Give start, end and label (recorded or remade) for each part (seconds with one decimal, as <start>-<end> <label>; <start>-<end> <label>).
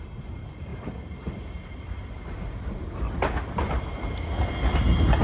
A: 0.0-5.2 recorded